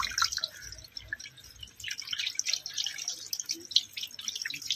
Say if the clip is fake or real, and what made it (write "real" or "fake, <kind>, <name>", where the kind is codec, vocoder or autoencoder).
real